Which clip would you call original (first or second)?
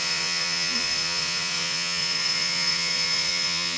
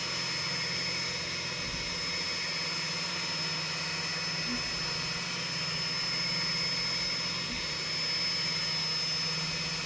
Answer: second